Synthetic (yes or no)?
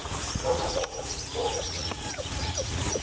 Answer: yes